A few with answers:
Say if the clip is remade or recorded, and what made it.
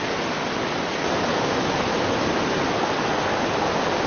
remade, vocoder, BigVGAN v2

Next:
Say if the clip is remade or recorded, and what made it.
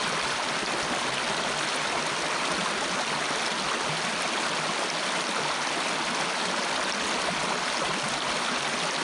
recorded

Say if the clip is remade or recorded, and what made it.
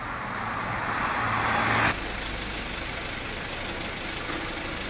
recorded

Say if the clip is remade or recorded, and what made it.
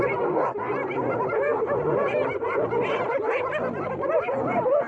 recorded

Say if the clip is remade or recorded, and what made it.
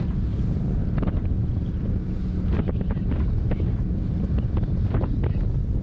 recorded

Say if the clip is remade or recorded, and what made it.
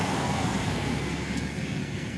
remade, codec, SNAC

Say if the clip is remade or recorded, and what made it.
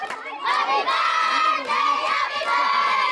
recorded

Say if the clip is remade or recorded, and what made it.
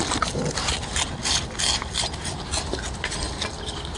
recorded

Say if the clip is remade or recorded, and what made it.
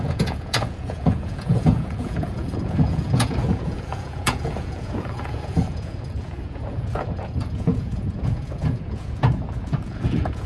remade, vocoder, Vocos